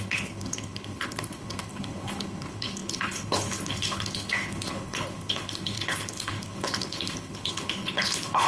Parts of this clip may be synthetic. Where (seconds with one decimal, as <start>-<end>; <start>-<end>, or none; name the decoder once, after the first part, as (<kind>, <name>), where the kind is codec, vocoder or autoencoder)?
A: 0.0-8.5 (codec, HILCodec)